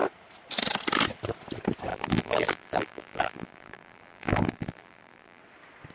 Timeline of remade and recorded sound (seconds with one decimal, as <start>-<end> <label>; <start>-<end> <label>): 0.0-1.9 recorded; 1.9-5.4 remade; 5.4-5.9 recorded